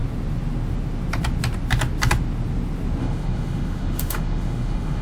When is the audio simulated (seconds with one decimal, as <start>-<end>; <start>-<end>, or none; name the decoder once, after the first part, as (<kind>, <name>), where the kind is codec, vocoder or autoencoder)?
3.0-5.0 (autoencoder, DAC-VAE)